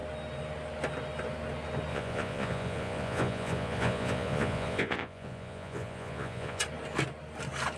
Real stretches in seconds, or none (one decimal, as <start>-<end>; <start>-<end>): 0.0-1.9; 6.6-7.8